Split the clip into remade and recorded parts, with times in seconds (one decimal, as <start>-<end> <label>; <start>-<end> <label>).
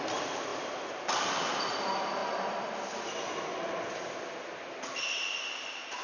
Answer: 0.0-6.0 recorded